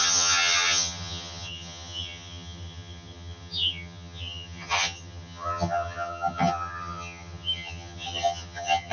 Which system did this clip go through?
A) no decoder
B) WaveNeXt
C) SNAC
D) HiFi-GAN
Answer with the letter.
D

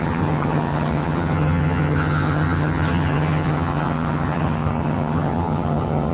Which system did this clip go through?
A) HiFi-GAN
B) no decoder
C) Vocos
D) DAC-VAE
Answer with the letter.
A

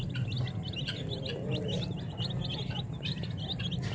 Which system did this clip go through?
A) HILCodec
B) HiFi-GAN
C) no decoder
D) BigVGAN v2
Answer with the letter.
C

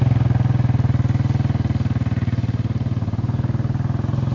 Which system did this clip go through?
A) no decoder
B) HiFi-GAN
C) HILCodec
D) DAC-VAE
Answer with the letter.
A